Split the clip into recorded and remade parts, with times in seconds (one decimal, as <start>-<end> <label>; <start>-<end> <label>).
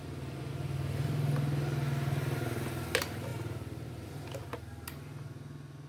0.0-0.5 remade; 0.5-3.3 recorded; 3.3-4.5 remade; 4.5-5.9 recorded